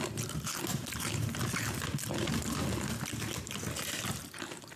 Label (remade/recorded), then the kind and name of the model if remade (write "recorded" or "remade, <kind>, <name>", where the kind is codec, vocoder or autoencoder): recorded